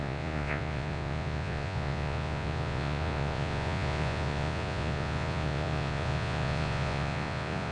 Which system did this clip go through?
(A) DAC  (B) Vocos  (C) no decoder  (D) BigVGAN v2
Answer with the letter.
B